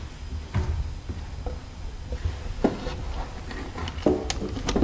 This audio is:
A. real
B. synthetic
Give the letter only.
A